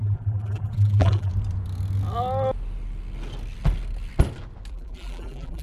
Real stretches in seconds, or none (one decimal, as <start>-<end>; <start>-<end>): 1.3-4.7